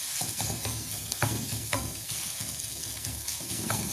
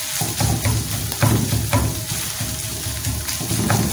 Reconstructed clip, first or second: first